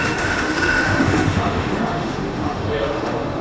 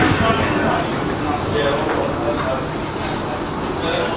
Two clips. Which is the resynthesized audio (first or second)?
first